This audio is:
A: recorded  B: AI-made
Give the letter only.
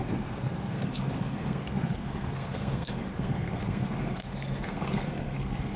B